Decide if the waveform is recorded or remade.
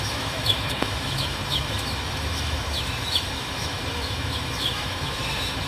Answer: remade